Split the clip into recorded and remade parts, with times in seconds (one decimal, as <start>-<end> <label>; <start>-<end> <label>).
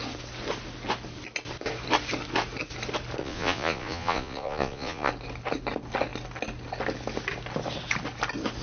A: 0.0-3.2 recorded; 3.2-5.1 remade; 5.1-8.6 recorded